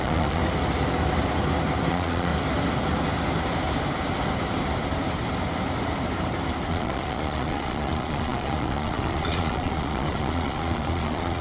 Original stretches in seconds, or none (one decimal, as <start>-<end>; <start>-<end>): 0.4-1.9; 2.3-6.7

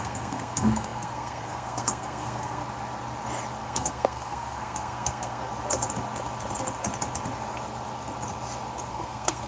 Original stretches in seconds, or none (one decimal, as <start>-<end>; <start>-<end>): 2.6-3.6; 5.4-8.9